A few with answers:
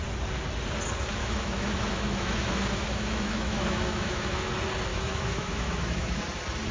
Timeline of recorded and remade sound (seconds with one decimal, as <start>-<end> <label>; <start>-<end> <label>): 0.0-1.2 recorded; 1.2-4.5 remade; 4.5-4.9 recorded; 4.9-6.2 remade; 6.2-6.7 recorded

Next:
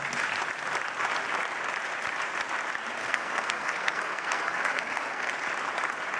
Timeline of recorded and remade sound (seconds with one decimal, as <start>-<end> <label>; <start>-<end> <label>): 0.0-3.0 recorded; 3.0-5.3 remade; 5.3-6.2 recorded

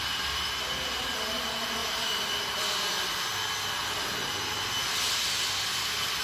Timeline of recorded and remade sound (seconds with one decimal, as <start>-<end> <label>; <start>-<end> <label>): 0.0-1.8 recorded; 1.8-3.2 remade; 3.2-4.8 recorded; 4.8-6.2 remade

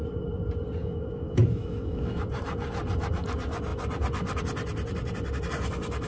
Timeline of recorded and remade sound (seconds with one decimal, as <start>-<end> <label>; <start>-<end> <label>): 0.0-0.8 recorded; 0.8-2.2 remade; 2.2-6.1 recorded

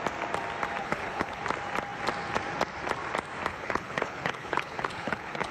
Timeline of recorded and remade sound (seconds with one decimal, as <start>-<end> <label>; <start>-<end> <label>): 0.0-0.8 recorded; 0.8-1.4 remade; 1.4-3.5 recorded; 3.5-5.5 remade

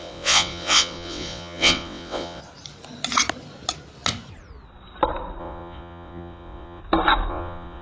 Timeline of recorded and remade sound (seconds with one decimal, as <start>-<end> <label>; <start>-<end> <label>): 0.0-2.4 remade; 2.4-5.4 recorded; 5.4-6.8 remade; 6.8-7.3 recorded; 7.3-7.8 remade

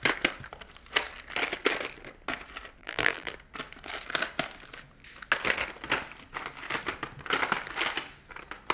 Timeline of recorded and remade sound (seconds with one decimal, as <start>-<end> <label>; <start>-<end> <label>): 0.0-2.8 recorded; 2.8-3.3 remade; 3.3-8.7 recorded